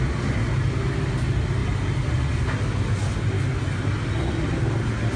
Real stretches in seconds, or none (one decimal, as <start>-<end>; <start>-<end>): 0.0-5.2